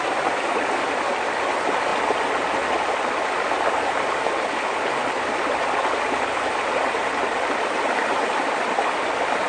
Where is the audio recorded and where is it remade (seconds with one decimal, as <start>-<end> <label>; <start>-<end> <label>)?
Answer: 0.0-9.5 recorded